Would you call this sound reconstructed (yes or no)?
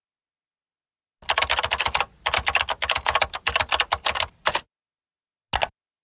no